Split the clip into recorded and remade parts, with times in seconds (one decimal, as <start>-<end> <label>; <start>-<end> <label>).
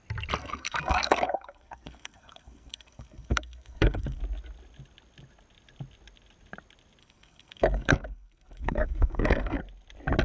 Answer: 0.0-0.4 recorded; 0.4-4.2 remade; 4.2-7.0 recorded; 7.0-9.6 remade; 9.6-10.2 recorded